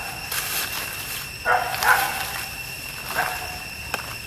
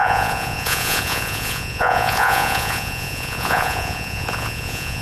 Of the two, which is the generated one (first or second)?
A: second